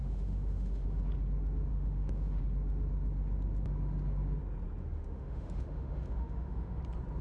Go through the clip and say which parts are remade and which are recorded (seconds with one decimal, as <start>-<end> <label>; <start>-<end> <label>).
0.0-1.0 remade; 1.0-1.7 recorded; 1.7-2.4 remade; 2.4-4.8 recorded; 4.8-6.8 remade; 6.8-7.2 recorded